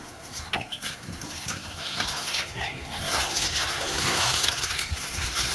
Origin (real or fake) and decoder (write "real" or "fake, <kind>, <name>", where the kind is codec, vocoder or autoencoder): fake, codec, SNAC